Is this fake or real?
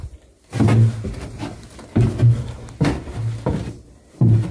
real